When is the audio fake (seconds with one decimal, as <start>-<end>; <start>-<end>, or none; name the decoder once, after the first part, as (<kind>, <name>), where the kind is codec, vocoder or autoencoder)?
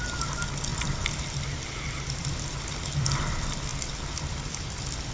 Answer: none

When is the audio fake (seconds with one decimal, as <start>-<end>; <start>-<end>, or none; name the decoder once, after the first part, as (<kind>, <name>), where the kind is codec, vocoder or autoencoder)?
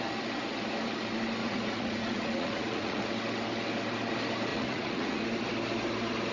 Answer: 1.4-3.1 (vocoder, Vocos); 4.5-5.2